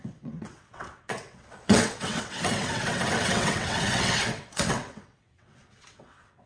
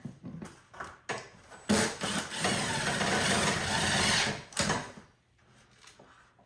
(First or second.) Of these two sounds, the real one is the second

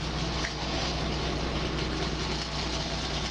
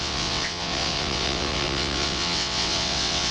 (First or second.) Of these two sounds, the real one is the first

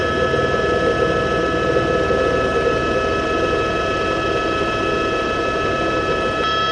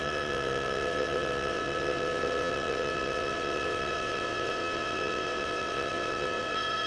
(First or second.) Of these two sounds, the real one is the first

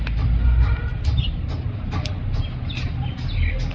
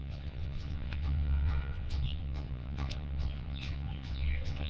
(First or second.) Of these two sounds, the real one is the first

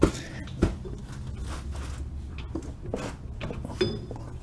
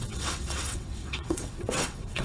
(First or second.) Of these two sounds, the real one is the first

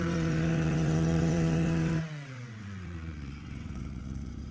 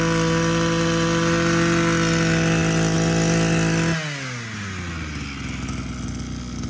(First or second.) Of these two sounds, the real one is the second